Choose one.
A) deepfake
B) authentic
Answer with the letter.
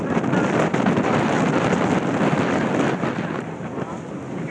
B